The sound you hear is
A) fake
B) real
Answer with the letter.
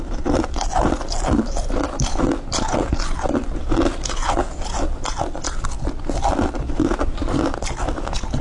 B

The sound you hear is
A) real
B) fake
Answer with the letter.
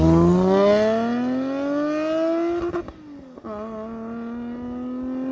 A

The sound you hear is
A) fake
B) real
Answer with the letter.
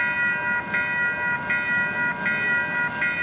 B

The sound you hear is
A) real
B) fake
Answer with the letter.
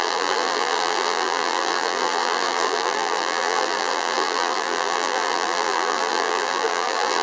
B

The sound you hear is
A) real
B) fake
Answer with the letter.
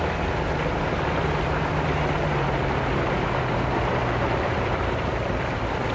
B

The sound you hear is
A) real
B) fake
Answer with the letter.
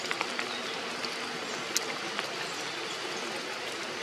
A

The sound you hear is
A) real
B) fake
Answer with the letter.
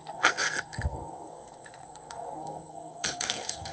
B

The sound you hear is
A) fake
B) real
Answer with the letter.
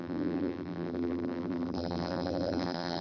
A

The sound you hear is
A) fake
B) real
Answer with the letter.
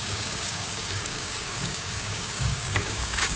A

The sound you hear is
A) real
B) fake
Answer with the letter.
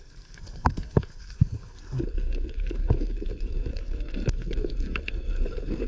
B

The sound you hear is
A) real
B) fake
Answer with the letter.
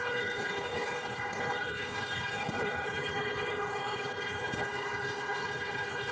B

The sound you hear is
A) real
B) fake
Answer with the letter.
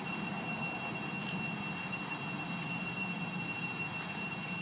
A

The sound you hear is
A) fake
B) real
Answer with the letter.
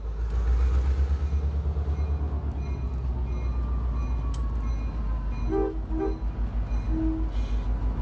B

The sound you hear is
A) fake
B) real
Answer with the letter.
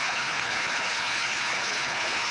A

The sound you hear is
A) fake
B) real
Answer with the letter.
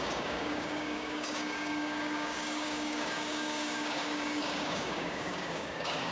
A